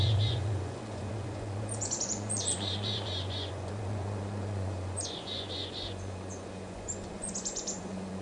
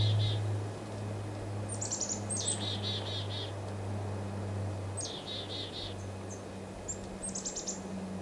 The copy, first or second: first